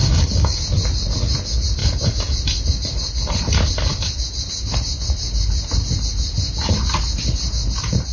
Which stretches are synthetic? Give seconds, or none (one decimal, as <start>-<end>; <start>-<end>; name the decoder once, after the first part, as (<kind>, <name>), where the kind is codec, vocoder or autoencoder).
0.0-0.6 (codec, DAC)